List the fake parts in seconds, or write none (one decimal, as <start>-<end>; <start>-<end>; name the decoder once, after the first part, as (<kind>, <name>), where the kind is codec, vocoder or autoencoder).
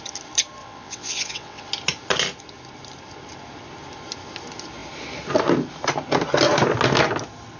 0.6-1.6 (vocoder, WaveNeXt)